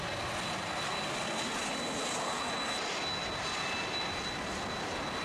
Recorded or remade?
recorded